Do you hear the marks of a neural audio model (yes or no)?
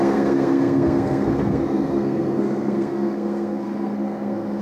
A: yes